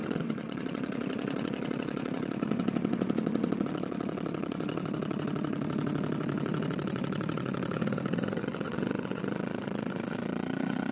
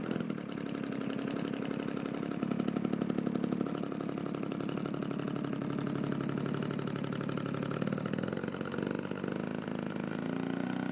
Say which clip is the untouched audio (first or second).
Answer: second